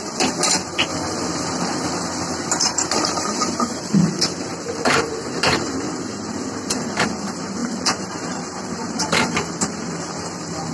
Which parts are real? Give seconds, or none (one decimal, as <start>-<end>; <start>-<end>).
0.9-2.6